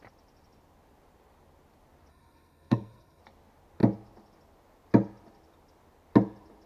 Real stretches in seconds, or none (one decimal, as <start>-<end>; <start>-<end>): 0.0-2.1; 3.2-6.7